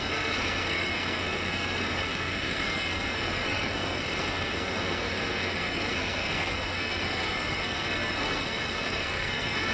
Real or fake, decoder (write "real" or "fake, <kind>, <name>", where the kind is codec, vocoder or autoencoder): fake, codec, SNAC